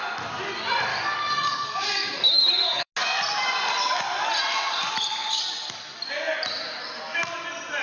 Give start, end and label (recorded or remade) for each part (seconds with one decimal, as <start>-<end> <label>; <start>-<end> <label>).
0.0-0.9 recorded; 0.9-2.9 remade; 2.9-7.8 recorded

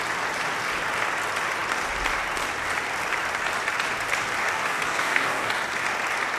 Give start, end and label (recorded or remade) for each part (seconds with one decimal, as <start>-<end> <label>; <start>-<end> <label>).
0.0-4.4 recorded; 4.4-5.5 remade; 5.5-6.4 recorded

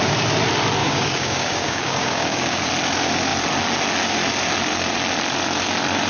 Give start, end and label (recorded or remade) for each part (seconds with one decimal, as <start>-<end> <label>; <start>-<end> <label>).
0.0-0.8 recorded; 0.8-2.7 remade; 2.7-6.1 recorded

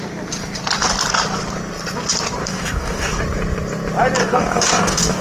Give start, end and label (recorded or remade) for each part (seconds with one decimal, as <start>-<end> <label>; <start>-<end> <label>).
0.0-2.4 recorded; 2.4-3.2 remade; 3.2-4.2 recorded; 4.2-5.2 remade